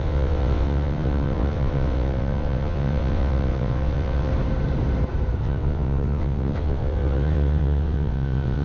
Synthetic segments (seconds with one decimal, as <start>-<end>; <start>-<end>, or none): 0.0-4.3; 5.4-8.6